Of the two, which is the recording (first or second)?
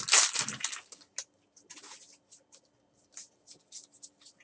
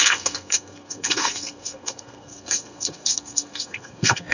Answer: first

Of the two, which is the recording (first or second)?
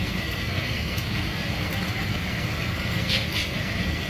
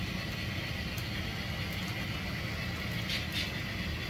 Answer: second